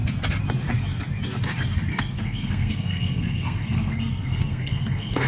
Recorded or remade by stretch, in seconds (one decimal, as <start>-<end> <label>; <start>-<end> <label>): 0.0-1.9 recorded; 1.9-5.3 remade